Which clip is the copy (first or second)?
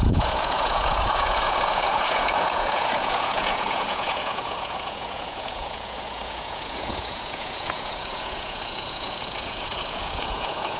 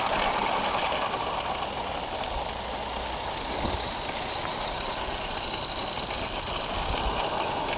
first